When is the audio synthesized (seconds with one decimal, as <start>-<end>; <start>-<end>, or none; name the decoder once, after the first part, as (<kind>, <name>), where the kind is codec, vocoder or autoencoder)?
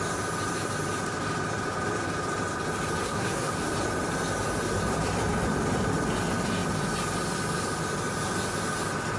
3.0-3.5 (codec, SNAC)